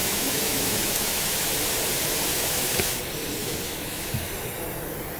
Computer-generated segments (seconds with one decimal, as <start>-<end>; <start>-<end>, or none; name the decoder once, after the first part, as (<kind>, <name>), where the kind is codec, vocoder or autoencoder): 0.0-1.5 (autoencoder, DAC-VAE); 2.3-3.0; 3.4-4.3

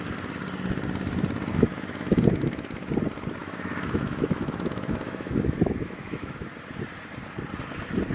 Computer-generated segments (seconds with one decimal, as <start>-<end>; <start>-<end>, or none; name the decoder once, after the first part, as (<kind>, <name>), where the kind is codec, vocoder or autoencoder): 1.5-2.9 (autoencoder, DAC-VAE); 3.4-6.5

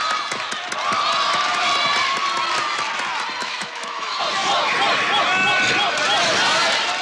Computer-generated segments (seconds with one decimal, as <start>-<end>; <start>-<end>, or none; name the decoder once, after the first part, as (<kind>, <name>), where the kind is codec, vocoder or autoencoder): 3.4-4.2 (autoencoder, DAC-VAE)

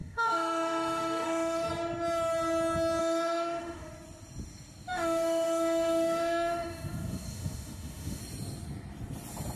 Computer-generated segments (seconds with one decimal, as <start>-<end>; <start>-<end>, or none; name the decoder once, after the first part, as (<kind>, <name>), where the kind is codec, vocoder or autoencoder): 0.0-1.7 (autoencoder, DAC-VAE); 3.0-3.9; 4.9-8.2